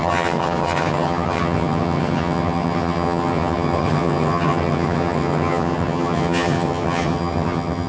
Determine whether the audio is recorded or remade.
remade